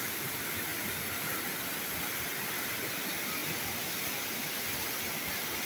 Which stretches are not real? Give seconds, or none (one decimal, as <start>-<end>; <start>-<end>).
0.0-0.7; 1.8-3.4